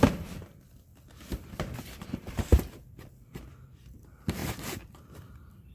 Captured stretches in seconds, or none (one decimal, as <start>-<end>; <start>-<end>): 0.9-1.5; 2.5-3.1